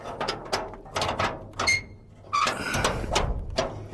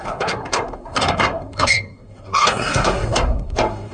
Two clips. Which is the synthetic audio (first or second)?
second